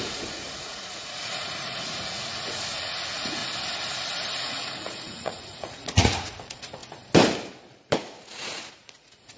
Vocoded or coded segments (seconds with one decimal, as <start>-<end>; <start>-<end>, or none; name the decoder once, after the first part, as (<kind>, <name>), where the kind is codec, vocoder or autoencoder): 0.0-3.4 (vocoder, Vocos); 4.2-6.8; 8.0-9.4